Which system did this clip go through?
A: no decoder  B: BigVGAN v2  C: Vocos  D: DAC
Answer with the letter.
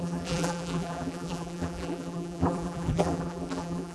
B